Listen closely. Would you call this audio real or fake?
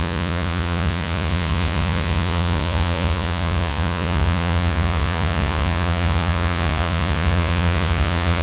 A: fake